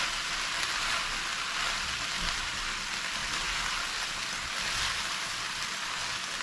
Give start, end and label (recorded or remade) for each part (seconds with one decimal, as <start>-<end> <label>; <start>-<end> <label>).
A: 0.0-6.4 recorded